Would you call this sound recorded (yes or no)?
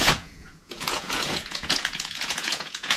no